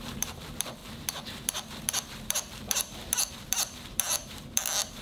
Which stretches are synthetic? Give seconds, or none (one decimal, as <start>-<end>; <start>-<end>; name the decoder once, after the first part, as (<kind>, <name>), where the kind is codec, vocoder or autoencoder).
0.0-5.0 (vocoder, BigVGAN v2)